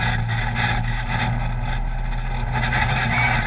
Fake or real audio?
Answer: real